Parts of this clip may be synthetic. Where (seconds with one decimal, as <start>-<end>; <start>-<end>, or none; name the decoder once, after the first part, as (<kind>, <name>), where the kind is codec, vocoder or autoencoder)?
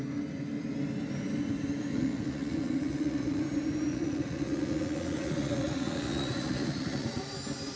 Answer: 1.9-3.4 (vocoder, Vocos); 3.9-7.2